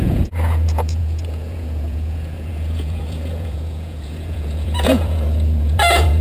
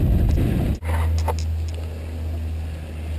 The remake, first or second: first